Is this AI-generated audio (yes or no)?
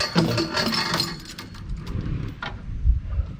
no